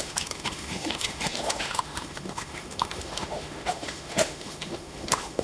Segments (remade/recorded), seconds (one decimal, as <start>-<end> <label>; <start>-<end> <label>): 0.0-5.4 remade